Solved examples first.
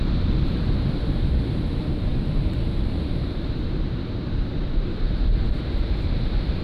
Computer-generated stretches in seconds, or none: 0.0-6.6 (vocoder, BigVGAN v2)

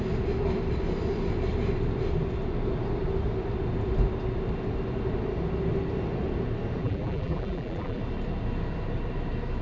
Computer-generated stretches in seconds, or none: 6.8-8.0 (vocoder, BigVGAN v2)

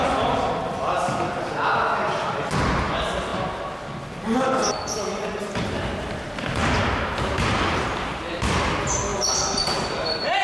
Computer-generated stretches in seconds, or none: none